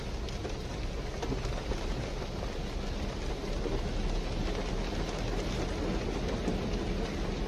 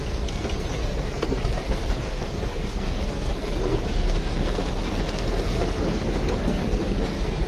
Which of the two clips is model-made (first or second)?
second